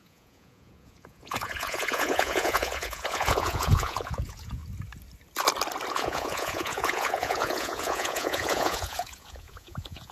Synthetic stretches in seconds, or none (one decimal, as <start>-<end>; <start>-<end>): 0.0-4.6; 5.9-10.1